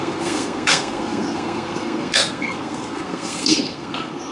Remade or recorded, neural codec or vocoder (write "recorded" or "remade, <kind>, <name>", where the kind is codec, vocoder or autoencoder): remade, codec, SNAC